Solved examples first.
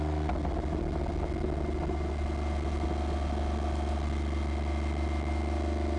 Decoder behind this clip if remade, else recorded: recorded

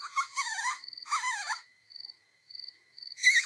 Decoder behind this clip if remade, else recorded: remade, autoencoder, DAC-VAE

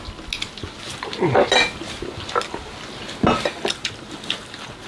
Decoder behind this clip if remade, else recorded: recorded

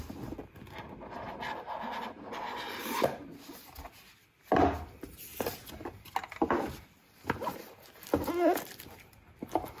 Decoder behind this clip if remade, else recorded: recorded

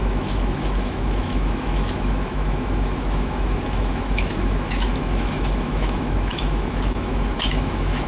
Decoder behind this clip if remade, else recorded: remade, autoencoder, DAC-VAE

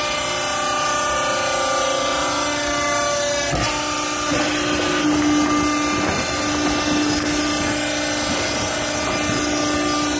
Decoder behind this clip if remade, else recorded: recorded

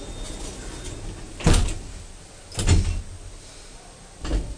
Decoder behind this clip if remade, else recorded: recorded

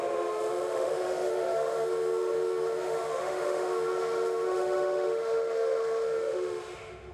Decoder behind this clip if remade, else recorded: remade, autoencoder, DAC-VAE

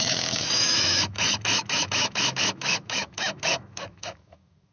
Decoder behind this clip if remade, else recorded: remade, autoencoder, DAC-VAE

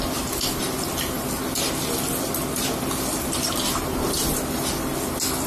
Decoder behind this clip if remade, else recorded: recorded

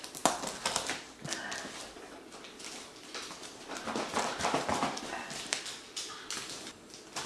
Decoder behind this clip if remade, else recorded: recorded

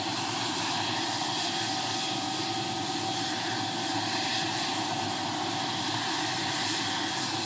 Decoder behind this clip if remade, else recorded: recorded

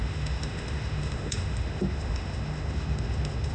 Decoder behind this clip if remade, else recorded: remade, autoencoder, DAC-VAE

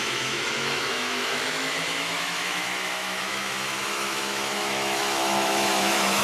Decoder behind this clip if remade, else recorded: remade, autoencoder, DAC-VAE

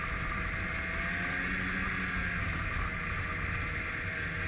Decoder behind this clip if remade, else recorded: recorded